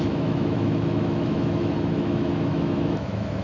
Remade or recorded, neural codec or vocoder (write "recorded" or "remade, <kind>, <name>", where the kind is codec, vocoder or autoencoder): remade, autoencoder, DAC-VAE